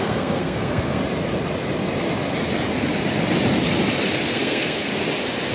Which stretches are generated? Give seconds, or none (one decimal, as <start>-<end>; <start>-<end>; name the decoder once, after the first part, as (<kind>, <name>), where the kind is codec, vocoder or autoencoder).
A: 0.0-1.0 (codec, SNAC); 4.3-4.9